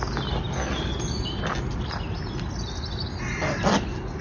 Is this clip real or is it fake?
real